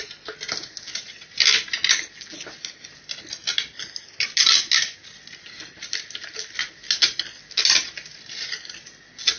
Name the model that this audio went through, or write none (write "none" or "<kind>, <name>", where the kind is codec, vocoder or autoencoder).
none